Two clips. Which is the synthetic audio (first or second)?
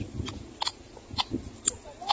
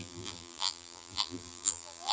second